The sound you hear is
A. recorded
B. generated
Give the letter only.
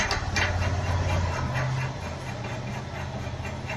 A